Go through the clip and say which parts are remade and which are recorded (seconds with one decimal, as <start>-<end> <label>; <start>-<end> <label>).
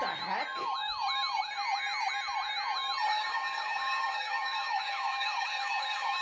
0.0-3.1 recorded; 3.1-6.2 remade